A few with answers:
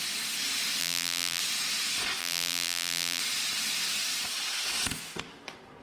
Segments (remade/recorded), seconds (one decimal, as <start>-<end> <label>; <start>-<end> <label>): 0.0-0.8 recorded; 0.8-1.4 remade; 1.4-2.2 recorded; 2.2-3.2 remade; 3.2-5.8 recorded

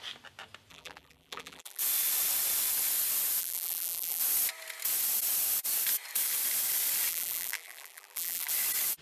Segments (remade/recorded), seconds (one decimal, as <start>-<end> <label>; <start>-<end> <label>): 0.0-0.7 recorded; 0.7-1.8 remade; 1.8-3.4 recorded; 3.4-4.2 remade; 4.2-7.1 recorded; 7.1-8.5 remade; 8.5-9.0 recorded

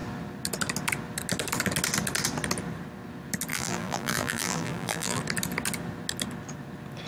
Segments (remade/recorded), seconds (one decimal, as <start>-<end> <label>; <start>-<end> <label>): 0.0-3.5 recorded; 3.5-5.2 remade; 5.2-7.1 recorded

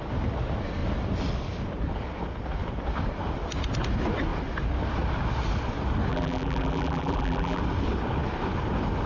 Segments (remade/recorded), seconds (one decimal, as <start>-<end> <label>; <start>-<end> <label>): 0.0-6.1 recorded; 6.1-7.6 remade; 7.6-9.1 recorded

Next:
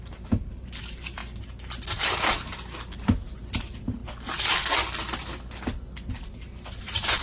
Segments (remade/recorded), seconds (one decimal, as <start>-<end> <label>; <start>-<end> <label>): 0.0-1.2 remade; 1.2-3.0 recorded; 3.0-4.0 remade; 4.0-6.1 recorded; 6.1-7.2 remade